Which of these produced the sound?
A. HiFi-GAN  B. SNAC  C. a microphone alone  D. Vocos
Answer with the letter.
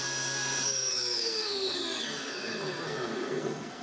B